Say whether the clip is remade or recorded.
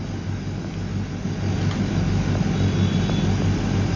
recorded